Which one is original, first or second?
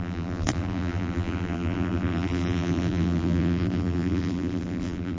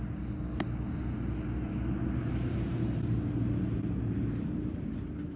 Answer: second